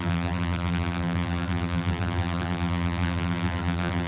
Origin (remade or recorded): remade